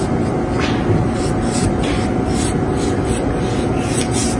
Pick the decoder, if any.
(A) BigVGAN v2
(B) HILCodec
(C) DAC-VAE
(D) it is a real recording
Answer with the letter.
D